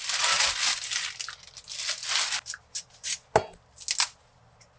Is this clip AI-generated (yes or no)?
no